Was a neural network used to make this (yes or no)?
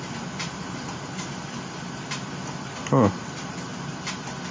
no